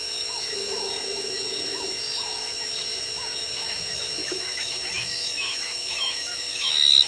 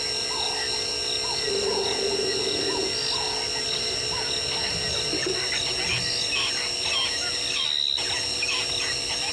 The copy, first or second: first